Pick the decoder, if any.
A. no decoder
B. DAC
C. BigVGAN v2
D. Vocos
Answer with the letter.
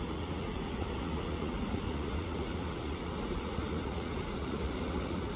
D